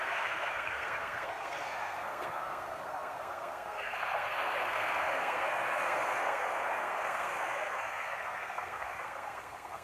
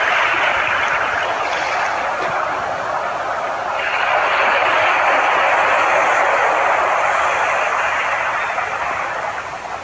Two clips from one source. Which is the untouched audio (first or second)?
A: second